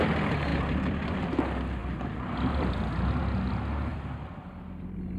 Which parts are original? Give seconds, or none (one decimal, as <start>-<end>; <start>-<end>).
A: 0.0-0.5; 1.4-1.8; 2.9-3.9; 4.4-5.2